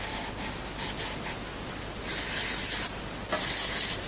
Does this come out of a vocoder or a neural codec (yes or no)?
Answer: no